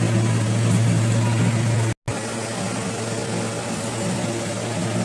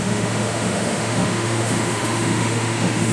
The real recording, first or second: first